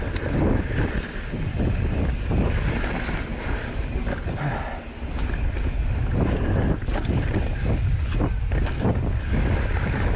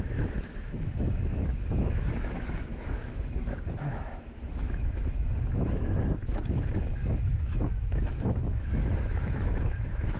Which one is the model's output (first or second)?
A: second